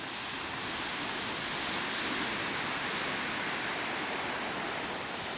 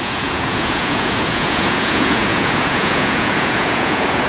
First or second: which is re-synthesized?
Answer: second